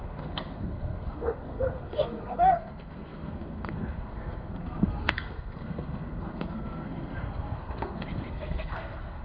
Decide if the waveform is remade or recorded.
remade